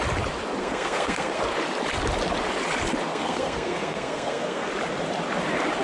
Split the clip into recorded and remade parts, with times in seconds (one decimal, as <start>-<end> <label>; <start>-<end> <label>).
0.0-0.6 recorded; 0.6-1.4 remade; 1.4-3.1 recorded; 3.1-4.7 remade; 4.7-5.8 recorded